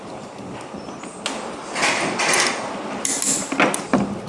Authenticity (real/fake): real